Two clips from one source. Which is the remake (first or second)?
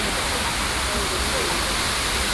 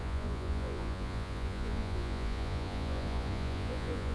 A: second